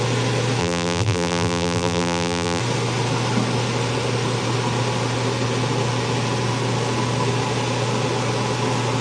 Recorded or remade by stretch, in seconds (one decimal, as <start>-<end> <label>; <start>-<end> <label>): 0.0-0.6 recorded; 0.6-2.6 remade; 2.6-9.0 recorded